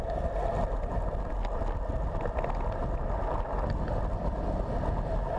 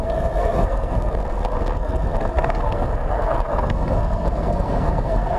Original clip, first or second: first